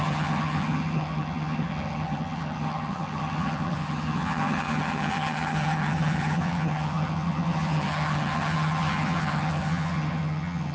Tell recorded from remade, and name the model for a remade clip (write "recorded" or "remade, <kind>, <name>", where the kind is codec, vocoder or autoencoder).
remade, vocoder, HiFi-GAN